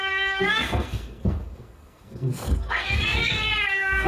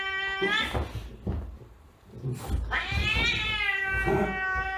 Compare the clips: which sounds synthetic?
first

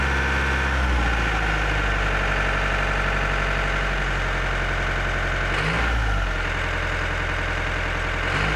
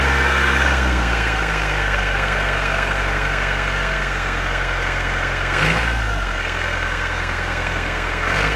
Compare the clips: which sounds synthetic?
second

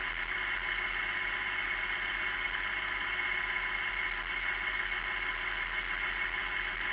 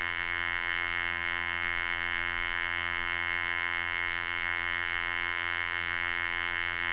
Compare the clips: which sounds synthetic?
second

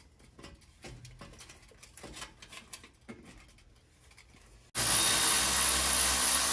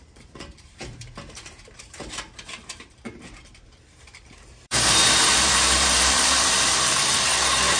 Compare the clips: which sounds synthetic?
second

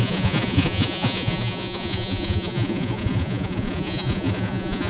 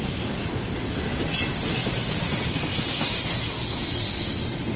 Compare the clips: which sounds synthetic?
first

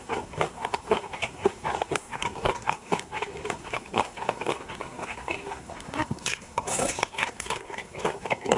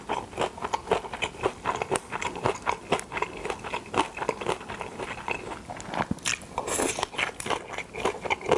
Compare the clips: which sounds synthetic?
first